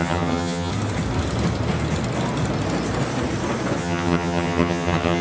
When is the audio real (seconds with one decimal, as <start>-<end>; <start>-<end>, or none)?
0.7-3.8